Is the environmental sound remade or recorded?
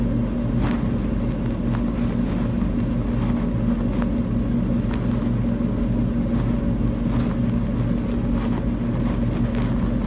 recorded